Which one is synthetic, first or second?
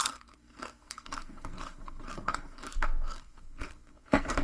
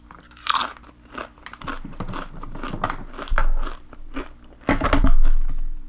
first